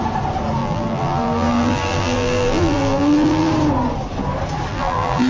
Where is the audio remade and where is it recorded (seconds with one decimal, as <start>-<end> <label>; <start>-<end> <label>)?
0.0-0.6 recorded; 0.6-3.5 remade; 3.5-4.7 recorded; 4.7-5.3 remade